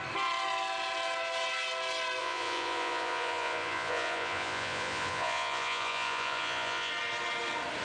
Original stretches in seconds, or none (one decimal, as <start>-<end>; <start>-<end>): 0.0-2.2; 6.9-7.8